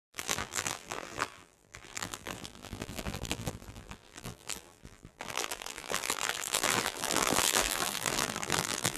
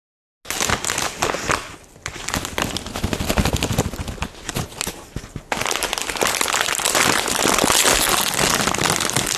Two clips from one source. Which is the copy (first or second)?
first